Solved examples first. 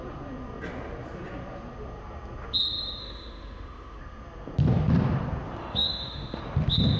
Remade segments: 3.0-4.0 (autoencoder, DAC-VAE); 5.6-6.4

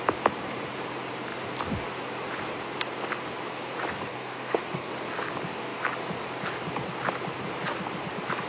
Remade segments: 4.1-4.9 (codec, SNAC)

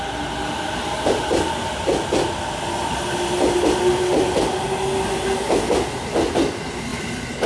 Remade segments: none

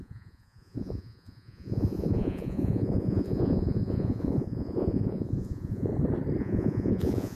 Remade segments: 0.0-5.9 (vocoder, Vocos); 6.4-7.3

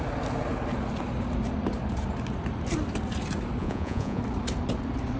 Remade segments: 3.6-4.2 (vocoder, Vocos)